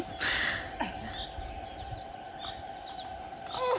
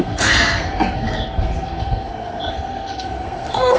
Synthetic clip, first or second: second